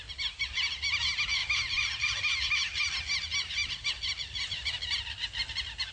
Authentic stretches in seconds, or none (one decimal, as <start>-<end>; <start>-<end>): 0.0-1.4; 2.2-3.6; 5.0-5.9